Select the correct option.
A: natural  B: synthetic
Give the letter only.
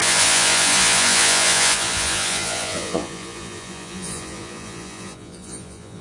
B